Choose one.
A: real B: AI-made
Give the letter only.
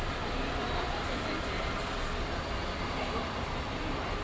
A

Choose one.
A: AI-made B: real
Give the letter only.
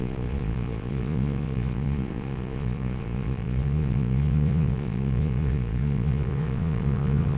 A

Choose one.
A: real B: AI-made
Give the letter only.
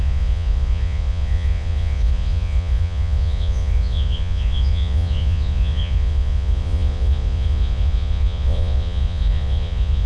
B